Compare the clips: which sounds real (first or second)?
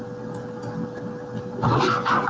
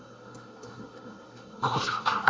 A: first